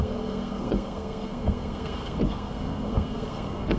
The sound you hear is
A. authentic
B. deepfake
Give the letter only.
B